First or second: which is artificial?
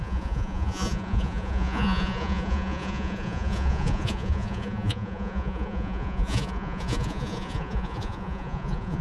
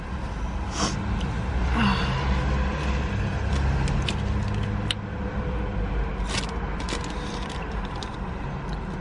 first